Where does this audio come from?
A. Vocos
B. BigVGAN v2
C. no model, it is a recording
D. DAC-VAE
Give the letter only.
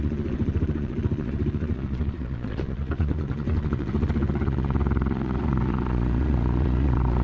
A